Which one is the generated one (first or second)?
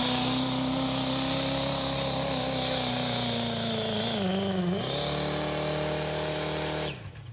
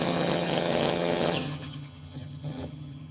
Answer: second